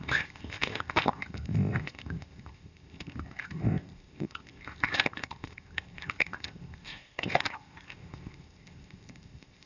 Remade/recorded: remade